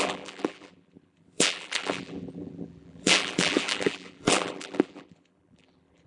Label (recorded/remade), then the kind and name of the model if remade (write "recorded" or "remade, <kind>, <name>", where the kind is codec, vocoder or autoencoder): remade, vocoder, BigVGAN v2